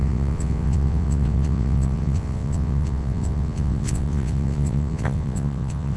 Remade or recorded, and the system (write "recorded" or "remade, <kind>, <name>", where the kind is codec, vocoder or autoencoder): remade, vocoder, WaveNeXt